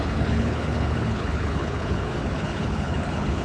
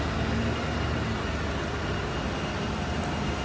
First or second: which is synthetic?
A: first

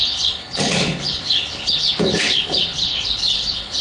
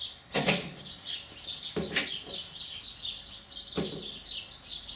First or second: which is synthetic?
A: first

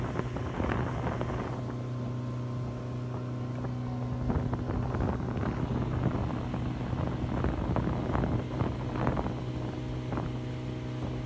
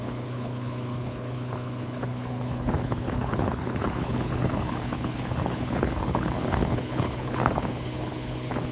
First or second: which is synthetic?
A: second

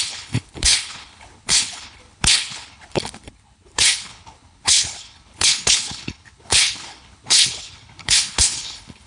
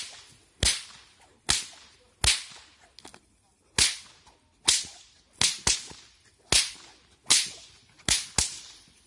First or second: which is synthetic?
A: first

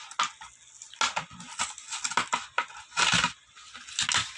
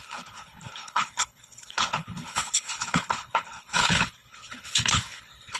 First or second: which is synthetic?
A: second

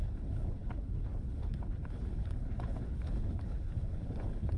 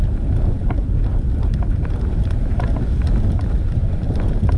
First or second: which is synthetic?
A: first